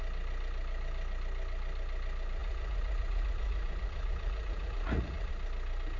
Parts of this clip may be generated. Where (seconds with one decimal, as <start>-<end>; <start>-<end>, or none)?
2.4-5.3